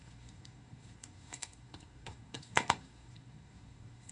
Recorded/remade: remade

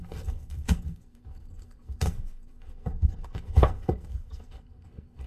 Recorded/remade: remade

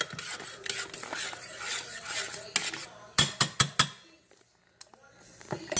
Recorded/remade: recorded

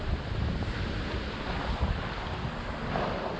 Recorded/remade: recorded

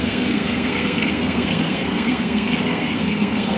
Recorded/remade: remade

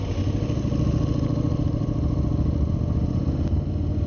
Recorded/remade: recorded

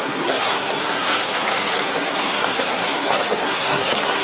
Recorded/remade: remade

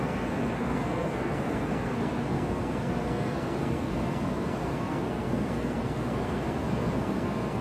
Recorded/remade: remade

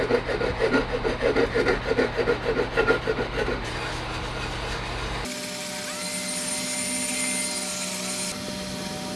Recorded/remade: recorded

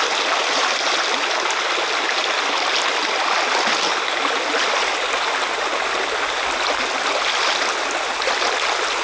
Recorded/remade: recorded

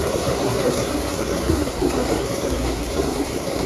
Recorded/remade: remade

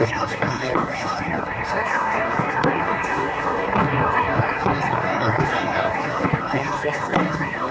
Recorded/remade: remade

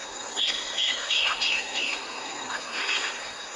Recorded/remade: remade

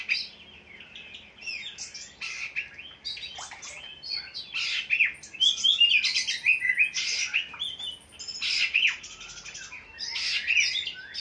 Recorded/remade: recorded